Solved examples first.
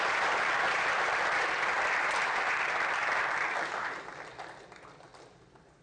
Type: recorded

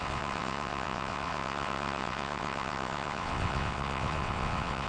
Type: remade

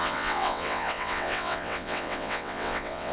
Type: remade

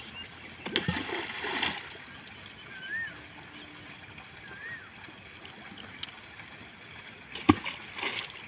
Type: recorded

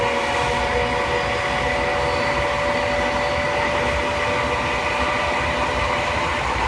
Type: recorded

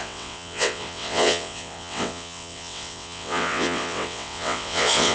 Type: remade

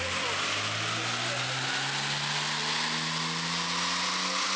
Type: recorded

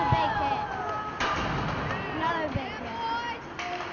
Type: recorded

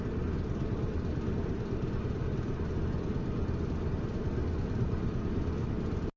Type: recorded